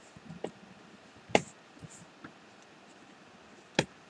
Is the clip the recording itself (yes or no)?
yes